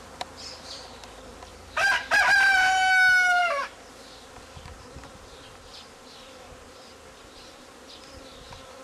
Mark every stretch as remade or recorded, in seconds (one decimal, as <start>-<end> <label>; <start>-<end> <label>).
0.0-1.5 recorded; 1.5-2.1 remade; 2.1-3.4 recorded; 3.4-3.9 remade; 3.9-8.8 recorded